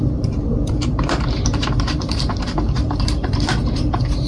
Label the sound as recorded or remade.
remade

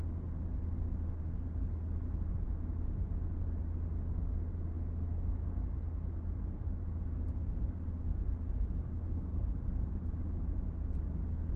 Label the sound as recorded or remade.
recorded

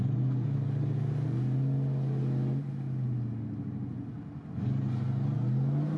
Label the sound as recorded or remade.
recorded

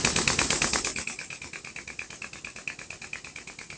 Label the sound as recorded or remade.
recorded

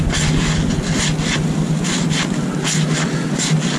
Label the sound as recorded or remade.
recorded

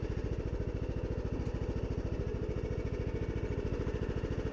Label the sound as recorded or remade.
recorded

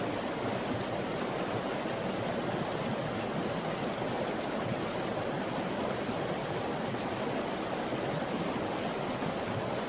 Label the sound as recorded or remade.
recorded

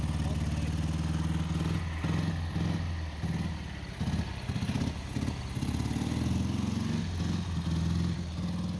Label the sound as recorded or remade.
recorded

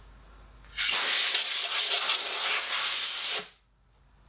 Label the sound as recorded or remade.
recorded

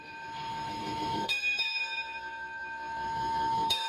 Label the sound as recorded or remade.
remade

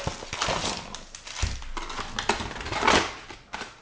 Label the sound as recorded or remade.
recorded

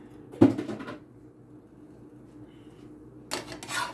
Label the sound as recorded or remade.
recorded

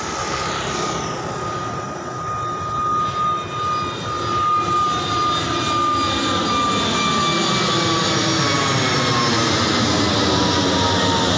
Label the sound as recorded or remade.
recorded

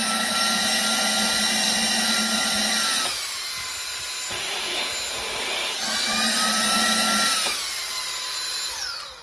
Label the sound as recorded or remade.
recorded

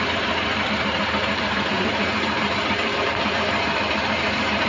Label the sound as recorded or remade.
remade